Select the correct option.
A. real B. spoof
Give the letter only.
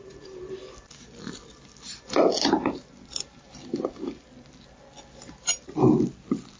A